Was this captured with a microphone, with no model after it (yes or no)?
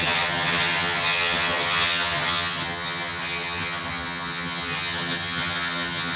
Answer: no